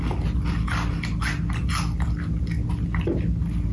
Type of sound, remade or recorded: recorded